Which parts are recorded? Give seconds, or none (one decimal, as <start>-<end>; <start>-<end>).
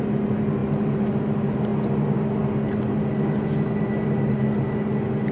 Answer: 0.0-5.3